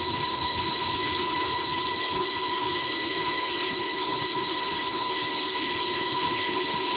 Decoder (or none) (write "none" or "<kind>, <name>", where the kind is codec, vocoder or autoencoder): codec, HILCodec